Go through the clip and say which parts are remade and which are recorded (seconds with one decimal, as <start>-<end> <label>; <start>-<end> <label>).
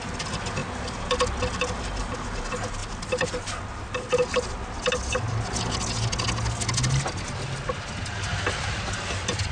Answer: 0.0-9.5 recorded